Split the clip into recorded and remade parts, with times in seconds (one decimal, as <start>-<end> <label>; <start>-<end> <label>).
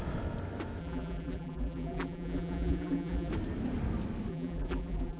0.0-0.8 recorded; 0.8-3.3 remade; 3.3-4.3 recorded; 4.3-5.2 remade